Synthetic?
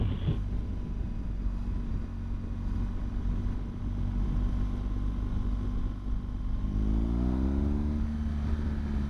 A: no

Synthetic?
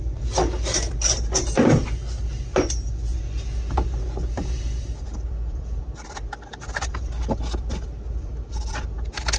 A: no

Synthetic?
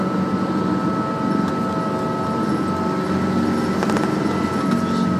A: no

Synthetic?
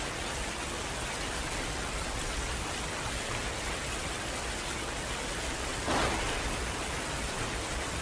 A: no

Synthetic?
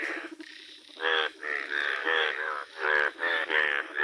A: yes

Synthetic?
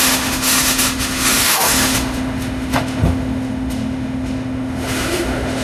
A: yes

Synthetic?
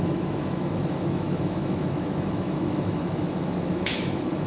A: yes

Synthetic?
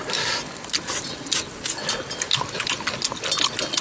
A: no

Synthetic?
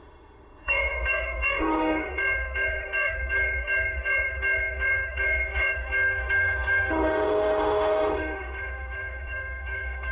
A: yes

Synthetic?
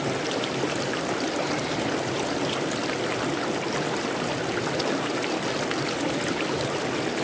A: no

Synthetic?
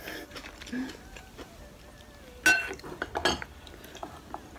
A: no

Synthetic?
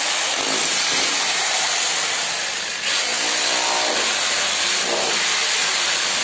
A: no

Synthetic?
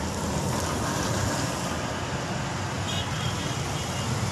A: no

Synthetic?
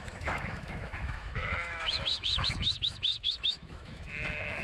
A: yes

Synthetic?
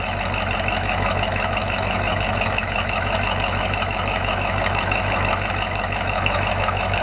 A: yes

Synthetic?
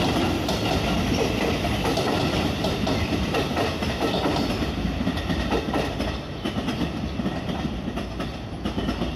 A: no